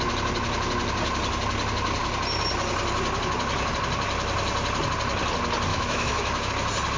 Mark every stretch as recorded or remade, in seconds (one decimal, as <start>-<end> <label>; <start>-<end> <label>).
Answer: 0.0-5.7 recorded; 5.7-6.5 remade; 6.5-7.0 recorded